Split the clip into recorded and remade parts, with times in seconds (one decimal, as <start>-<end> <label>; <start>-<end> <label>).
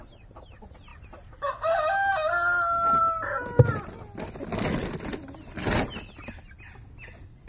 0.0-7.5 recorded